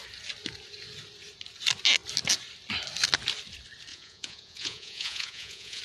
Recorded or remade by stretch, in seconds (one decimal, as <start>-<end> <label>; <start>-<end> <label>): 0.0-3.9 recorded; 3.9-5.8 remade